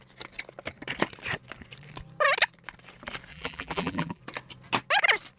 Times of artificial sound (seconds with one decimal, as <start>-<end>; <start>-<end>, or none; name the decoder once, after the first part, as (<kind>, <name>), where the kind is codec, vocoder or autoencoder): 3.3-4.2 (vocoder, BigVGAN v2)